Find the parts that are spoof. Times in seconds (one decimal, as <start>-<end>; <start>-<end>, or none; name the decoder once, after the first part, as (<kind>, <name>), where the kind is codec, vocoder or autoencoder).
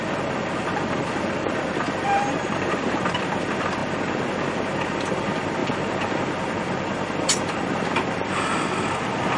0.0-9.4 (vocoder, BigVGAN v2)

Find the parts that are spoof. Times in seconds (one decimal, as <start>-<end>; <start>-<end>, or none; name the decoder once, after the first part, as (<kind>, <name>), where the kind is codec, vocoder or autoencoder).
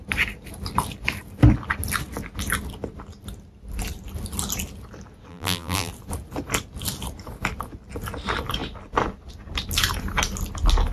5.3-5.9 (vocoder, BigVGAN v2)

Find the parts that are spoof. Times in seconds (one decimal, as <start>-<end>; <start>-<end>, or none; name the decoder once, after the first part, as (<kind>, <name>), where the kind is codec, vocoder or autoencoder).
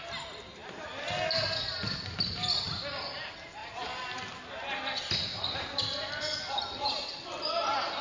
5.3-6.1 (vocoder, BigVGAN v2)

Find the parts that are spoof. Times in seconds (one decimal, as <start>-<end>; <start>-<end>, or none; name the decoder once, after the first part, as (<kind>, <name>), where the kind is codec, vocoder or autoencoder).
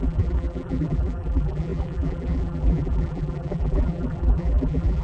0.0-5.0 (vocoder, BigVGAN v2)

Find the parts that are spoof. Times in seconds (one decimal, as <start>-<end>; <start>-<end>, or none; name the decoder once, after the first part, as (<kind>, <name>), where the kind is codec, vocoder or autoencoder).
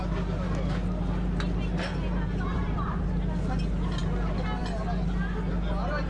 2.5-3.3 (vocoder, BigVGAN v2)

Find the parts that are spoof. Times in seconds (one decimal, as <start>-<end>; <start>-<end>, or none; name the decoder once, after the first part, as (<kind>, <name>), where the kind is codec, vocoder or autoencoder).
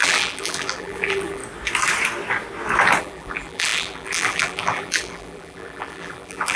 0.0-1.4 (vocoder, BigVGAN v2); 3.0-6.6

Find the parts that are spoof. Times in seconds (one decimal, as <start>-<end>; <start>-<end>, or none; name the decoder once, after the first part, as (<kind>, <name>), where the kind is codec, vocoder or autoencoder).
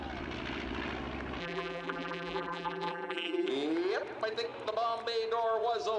1.4-3.5 (vocoder, BigVGAN v2)